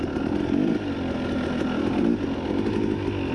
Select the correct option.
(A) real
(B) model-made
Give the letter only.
A